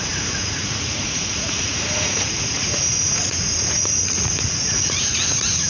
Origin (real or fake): fake